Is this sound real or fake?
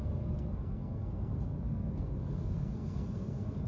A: fake